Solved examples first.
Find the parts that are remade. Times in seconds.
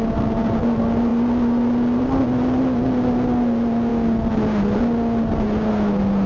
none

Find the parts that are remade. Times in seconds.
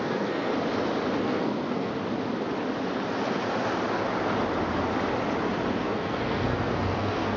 0.0-0.5 (codec, SNAC); 1.2-1.9; 5.8-7.4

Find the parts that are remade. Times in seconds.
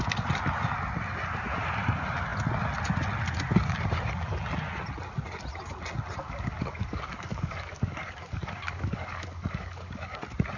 6.2-10.2 (codec, DAC)